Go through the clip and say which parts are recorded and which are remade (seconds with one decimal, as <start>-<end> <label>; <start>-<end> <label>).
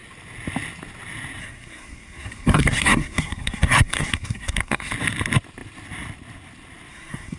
0.0-1.4 recorded; 1.4-4.9 remade; 4.9-6.9 recorded; 6.9-7.4 remade